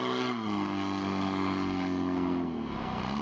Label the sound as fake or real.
fake